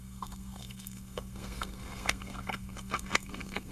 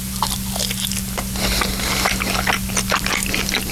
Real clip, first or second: second